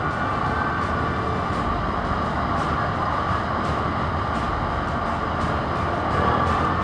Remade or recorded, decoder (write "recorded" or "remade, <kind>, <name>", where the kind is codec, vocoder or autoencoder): recorded